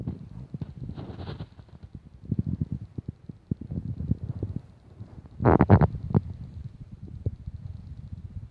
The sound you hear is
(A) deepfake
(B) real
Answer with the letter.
B